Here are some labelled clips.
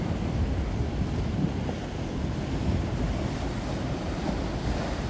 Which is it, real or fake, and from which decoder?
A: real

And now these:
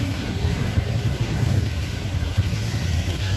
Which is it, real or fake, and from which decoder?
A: fake, codec, SNAC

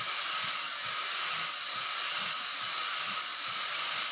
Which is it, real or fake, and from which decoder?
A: real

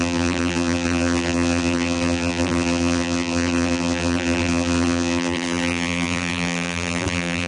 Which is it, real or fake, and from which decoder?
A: fake, vocoder, BigVGAN v2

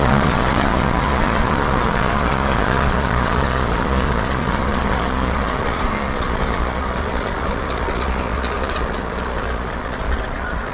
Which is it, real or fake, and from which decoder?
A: fake, vocoder, Vocos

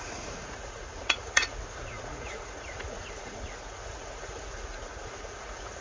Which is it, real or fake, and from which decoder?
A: fake, vocoder, Vocos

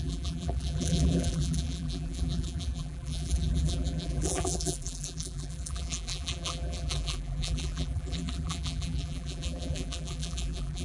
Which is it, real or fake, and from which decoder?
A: fake, vocoder, BigVGAN v2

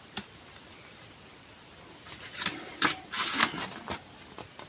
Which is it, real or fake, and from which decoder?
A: real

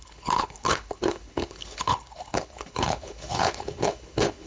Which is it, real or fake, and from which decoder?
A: fake, codec, HILCodec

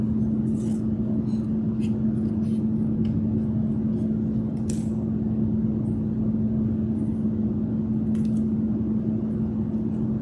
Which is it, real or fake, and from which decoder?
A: real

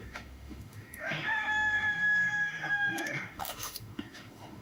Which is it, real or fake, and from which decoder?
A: fake, autoencoder, DAC-VAE